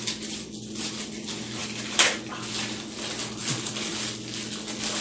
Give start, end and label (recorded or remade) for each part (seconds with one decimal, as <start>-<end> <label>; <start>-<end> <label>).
0.0-5.0 recorded

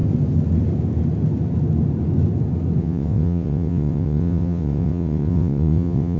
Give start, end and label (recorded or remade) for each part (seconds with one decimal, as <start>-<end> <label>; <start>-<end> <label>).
0.0-2.8 recorded; 2.8-6.2 remade

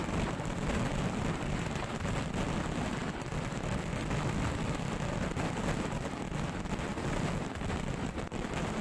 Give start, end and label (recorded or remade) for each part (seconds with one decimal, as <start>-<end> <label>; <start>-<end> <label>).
0.0-8.8 recorded